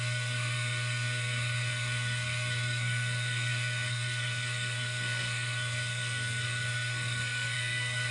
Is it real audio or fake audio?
fake